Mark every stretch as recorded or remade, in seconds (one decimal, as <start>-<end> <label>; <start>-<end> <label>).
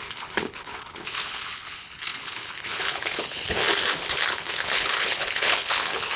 0.0-3.6 remade; 3.6-4.2 recorded; 4.2-6.2 remade